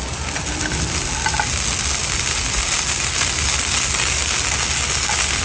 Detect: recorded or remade recorded